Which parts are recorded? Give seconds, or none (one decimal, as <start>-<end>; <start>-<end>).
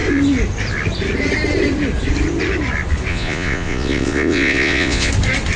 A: 0.0-3.1; 5.1-5.6